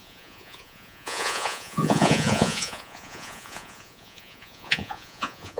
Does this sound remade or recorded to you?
remade